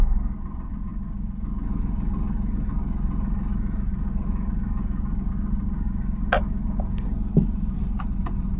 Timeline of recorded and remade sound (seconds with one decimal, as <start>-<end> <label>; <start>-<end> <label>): 0.0-8.6 recorded